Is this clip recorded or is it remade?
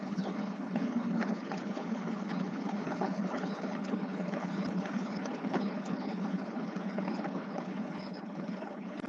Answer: remade